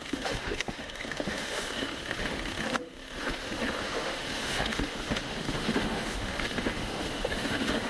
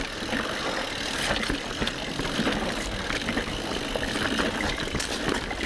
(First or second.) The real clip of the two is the second